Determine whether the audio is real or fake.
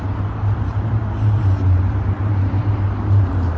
fake